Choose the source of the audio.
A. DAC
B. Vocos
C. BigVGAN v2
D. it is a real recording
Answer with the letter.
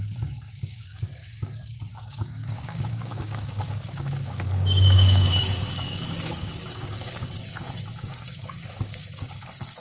A